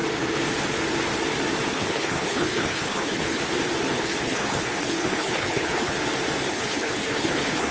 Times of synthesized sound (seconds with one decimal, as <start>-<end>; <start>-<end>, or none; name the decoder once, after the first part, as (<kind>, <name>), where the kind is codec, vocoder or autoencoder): 1.7-3.4 (codec, HILCodec); 3.9-5.9; 6.5-7.7